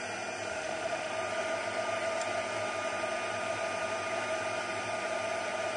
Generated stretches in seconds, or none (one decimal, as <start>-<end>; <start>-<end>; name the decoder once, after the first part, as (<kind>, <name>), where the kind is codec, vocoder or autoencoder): 0.5-1.1 (autoencoder, DAC-VAE)